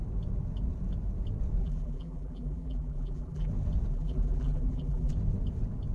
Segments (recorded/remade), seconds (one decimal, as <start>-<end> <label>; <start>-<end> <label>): 0.0-1.6 recorded; 1.6-3.5 remade; 3.5-3.9 recorded; 3.9-5.1 remade; 5.1-5.9 recorded

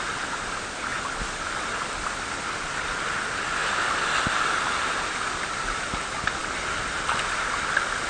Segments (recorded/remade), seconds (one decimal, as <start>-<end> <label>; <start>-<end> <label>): 0.0-8.1 recorded